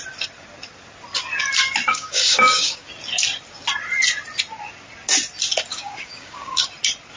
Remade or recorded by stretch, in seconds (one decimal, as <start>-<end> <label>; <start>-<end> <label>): 0.0-1.9 recorded; 1.9-2.9 remade; 2.9-5.7 recorded; 5.7-6.6 remade; 6.6-7.2 recorded

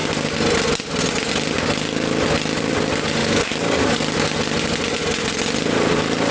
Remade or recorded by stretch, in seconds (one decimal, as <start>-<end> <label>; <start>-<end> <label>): 0.0-3.2 recorded; 3.2-4.0 remade; 4.0-6.3 recorded

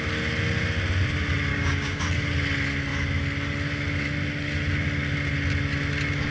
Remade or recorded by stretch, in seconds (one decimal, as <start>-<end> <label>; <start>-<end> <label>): 0.0-1.5 recorded; 1.5-2.0 remade; 2.0-6.3 recorded